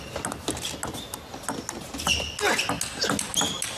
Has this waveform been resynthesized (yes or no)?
no